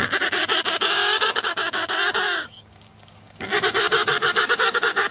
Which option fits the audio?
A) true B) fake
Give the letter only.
B